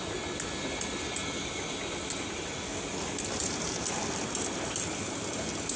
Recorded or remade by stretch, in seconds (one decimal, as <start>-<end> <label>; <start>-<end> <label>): 0.0-5.8 recorded